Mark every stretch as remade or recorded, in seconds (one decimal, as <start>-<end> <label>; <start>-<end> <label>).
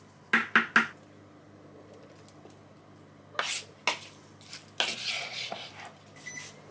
0.0-4.9 recorded; 4.9-5.7 remade; 5.7-6.7 recorded